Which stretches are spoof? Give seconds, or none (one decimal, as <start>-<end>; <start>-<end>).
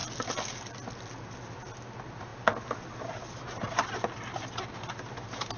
none